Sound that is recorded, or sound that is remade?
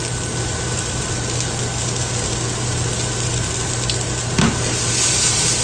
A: recorded